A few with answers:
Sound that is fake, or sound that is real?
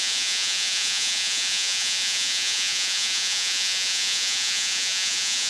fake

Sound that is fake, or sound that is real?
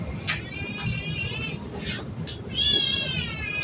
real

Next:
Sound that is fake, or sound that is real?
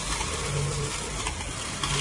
real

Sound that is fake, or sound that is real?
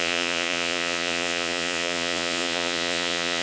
fake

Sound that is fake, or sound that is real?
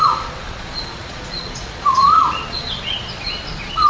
fake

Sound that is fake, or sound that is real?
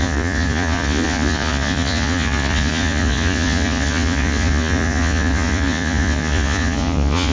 fake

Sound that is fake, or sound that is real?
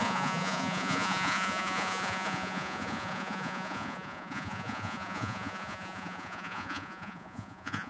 fake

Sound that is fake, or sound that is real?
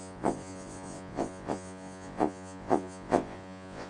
fake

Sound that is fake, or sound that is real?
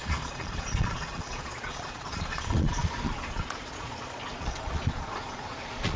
fake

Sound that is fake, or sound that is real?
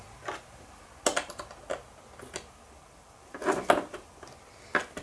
real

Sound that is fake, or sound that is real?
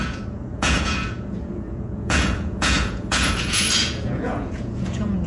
fake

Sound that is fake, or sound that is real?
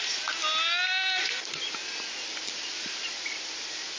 real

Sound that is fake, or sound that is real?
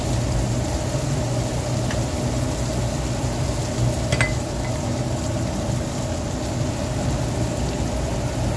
real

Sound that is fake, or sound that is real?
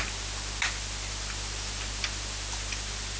real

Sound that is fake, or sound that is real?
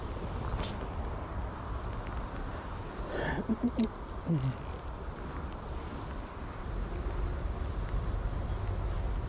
real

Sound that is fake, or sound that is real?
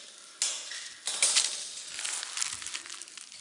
real